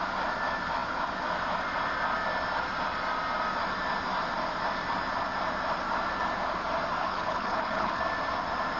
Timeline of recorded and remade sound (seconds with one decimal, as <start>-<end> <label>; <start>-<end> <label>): 0.0-7.0 recorded; 7.0-8.0 remade; 8.0-8.8 recorded